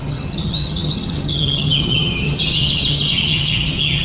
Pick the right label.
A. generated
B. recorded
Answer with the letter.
A